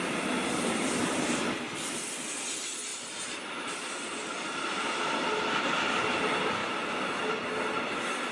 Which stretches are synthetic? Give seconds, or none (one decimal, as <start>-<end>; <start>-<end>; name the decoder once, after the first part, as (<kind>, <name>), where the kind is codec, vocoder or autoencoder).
none